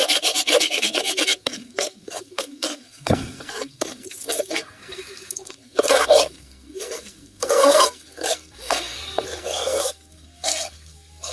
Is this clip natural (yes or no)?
no